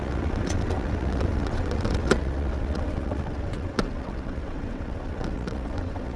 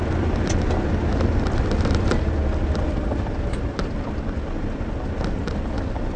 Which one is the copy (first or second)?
first